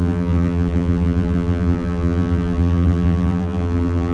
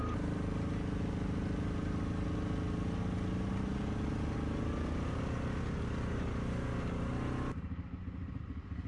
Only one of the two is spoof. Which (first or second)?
first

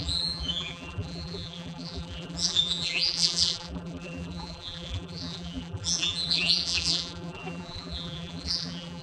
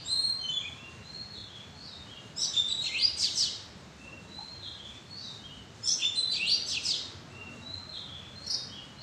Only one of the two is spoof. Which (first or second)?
first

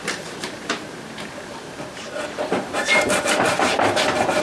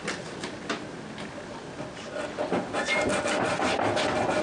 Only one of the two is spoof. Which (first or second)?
first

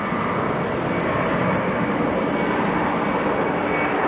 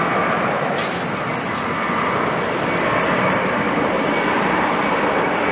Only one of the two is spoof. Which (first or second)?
second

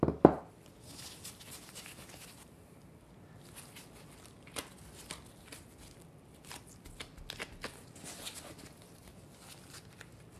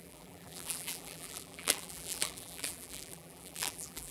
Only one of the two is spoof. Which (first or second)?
second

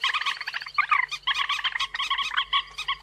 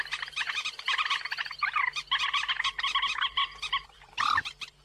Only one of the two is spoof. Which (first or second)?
second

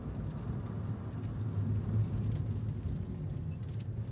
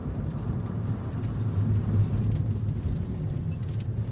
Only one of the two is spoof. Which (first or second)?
second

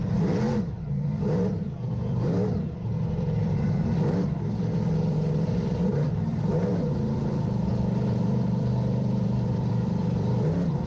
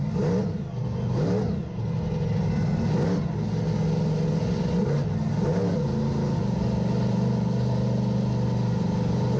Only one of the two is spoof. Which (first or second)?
first